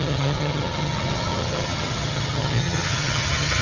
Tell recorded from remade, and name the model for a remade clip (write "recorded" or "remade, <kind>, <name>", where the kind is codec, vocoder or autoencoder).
remade, vocoder, HiFi-GAN